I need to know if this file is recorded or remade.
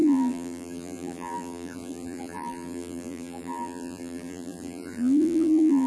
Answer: remade